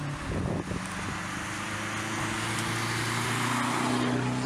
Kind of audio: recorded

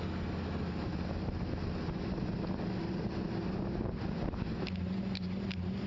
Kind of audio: recorded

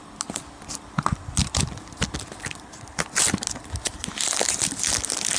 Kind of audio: recorded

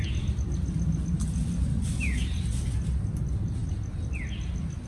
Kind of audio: recorded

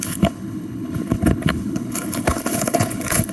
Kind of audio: remade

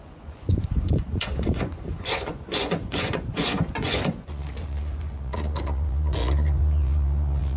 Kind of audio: remade